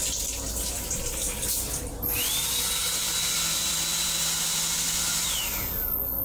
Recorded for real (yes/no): yes